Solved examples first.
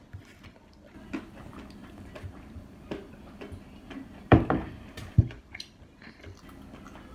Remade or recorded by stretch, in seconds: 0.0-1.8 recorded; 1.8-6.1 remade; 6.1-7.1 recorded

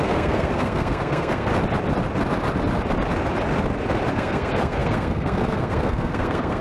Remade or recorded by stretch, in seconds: 0.0-1.5 remade; 1.5-4.1 recorded; 4.1-6.6 remade

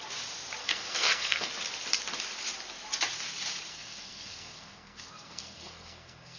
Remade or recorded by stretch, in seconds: 0.0-0.6 recorded; 0.6-1.5 remade; 1.5-3.7 recorded; 3.7-6.4 remade

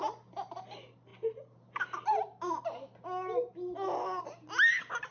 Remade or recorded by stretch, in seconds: 0.0-5.1 recorded

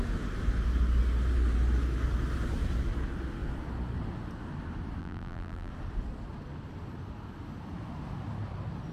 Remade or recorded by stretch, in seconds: 0.0-5.0 recorded; 5.0-5.7 remade; 5.7-8.9 recorded